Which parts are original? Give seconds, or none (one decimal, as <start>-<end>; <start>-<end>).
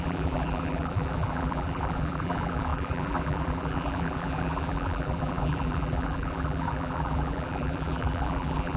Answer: none